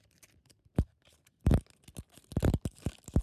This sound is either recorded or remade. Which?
recorded